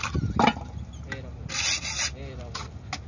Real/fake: real